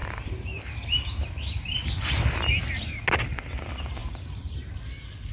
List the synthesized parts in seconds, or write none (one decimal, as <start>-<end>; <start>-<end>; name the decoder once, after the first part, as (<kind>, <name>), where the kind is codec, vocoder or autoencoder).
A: 0.0-1.8 (vocoder, BigVGAN v2); 4.0-5.3